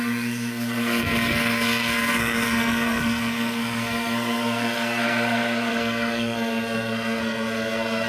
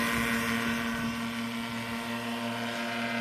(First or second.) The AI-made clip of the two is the first